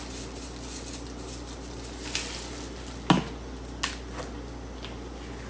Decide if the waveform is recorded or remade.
recorded